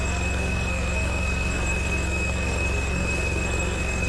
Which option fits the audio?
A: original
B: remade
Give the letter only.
B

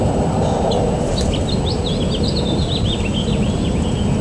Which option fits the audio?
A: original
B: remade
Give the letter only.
A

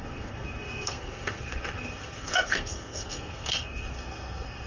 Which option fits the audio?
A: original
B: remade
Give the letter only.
B